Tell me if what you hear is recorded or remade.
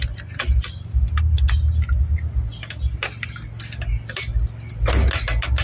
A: recorded